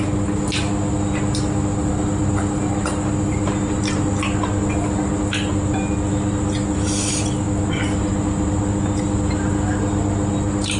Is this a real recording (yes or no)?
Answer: yes